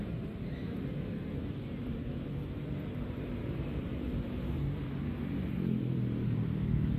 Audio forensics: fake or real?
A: fake